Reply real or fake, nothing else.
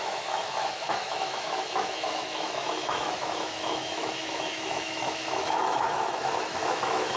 fake